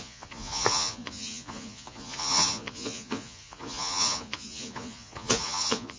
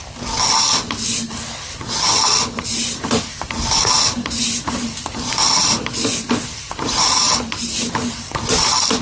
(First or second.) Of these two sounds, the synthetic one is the first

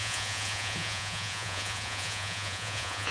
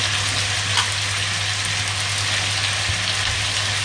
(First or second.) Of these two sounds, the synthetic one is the first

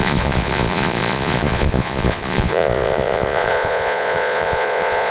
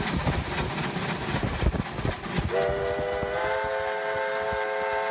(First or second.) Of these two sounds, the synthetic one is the first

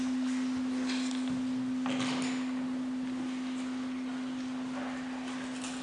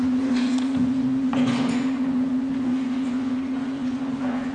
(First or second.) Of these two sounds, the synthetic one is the second